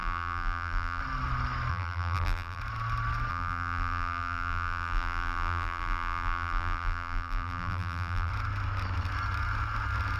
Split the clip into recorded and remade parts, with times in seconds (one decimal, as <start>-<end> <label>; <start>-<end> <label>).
0.0-1.0 remade; 1.0-1.7 recorded; 1.7-2.6 remade; 2.6-3.3 recorded; 3.3-8.3 remade; 8.3-10.2 recorded